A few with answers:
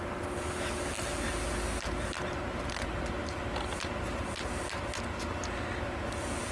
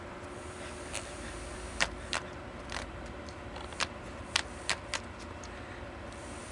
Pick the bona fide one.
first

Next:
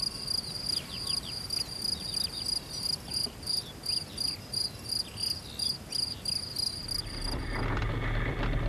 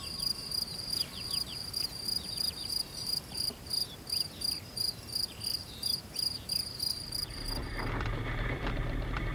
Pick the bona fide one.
first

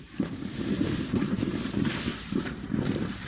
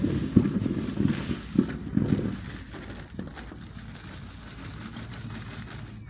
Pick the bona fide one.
second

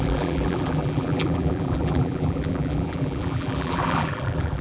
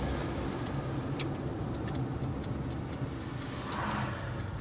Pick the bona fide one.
second